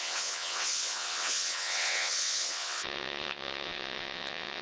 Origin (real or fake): fake